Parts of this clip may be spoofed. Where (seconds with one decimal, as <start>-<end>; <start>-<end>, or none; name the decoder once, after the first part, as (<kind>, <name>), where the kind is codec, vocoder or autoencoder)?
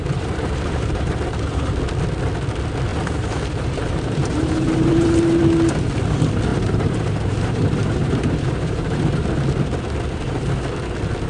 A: 0.0-1.7 (vocoder, BigVGAN v2); 2.9-5.4; 6.5-9.3